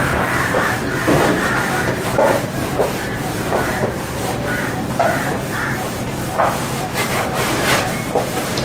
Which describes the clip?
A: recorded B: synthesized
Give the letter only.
B